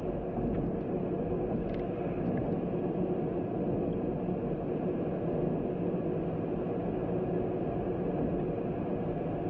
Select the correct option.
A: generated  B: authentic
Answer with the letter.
B